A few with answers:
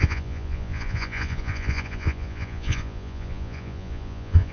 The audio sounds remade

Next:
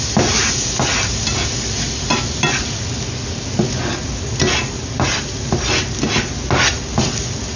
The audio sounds recorded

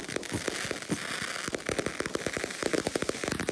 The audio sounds recorded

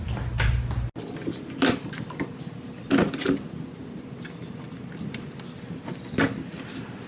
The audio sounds recorded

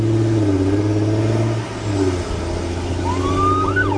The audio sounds recorded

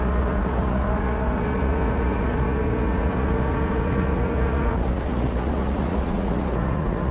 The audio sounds remade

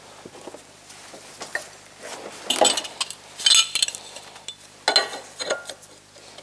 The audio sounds recorded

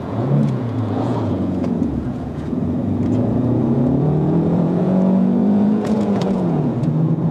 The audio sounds remade